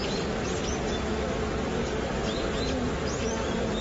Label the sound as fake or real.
real